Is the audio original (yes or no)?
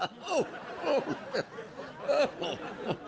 yes